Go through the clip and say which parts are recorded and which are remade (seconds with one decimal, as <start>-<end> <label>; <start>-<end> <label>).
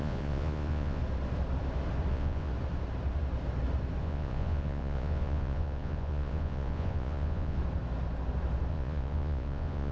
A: 0.0-1.0 remade; 1.0-2.1 recorded; 2.1-2.5 remade; 2.5-4.0 recorded; 4.0-7.6 remade; 7.6-8.7 recorded; 8.7-9.9 remade